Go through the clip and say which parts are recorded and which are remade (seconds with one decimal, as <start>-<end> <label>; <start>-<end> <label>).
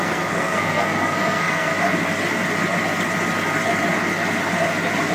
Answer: 0.0-1.7 remade; 1.7-5.1 recorded